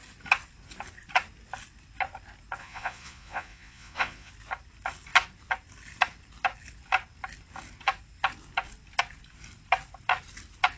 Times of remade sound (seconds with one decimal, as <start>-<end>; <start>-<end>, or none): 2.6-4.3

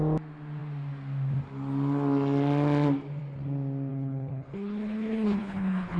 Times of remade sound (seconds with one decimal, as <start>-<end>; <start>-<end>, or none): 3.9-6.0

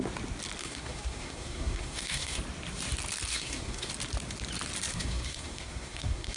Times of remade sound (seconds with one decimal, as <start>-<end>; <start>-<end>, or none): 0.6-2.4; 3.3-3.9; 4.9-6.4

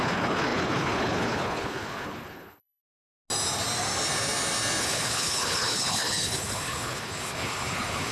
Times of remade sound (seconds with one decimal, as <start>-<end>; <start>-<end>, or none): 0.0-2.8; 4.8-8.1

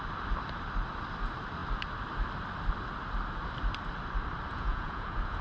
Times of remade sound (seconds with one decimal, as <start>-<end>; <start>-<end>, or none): 4.5-5.4

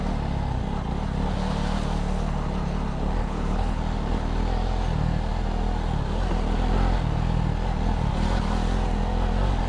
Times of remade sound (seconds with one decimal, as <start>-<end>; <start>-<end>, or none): 3.2-3.8

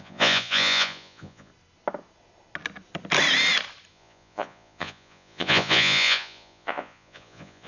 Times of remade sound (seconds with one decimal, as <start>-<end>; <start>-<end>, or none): 0.0-1.5; 3.9-7.7